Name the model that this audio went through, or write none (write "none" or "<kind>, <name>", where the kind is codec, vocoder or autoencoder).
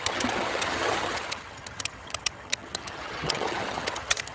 vocoder, HiFi-GAN